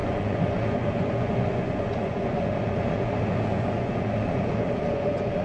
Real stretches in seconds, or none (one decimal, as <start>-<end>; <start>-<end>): none